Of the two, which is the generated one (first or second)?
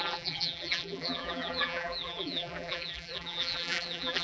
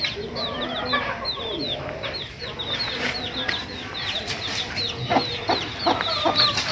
first